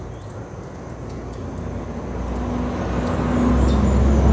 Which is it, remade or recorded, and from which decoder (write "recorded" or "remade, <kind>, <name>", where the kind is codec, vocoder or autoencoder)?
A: recorded